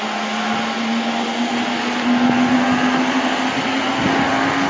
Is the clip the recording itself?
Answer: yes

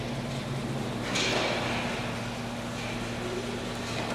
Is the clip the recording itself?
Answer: yes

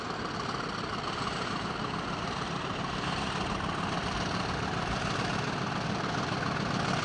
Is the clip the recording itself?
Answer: no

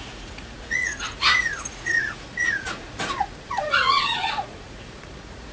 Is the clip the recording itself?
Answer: no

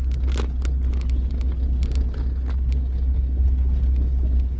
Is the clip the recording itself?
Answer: yes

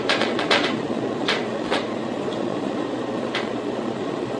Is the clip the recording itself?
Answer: no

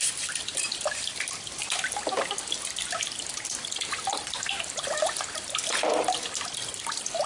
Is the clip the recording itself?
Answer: no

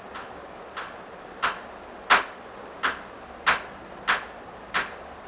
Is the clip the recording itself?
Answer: yes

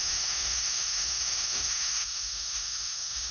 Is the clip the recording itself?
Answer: no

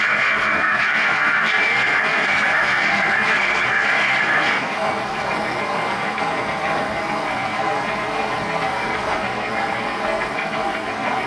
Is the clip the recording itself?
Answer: no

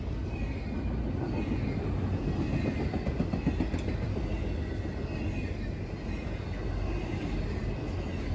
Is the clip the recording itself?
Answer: yes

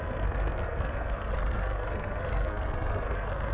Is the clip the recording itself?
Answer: no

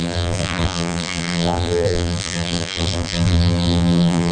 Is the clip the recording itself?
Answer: no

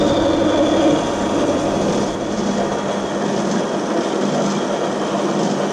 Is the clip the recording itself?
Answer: yes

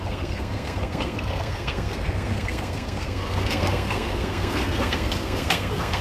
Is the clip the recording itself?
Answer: no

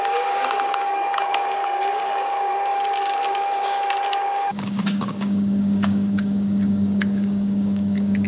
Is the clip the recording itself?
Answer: no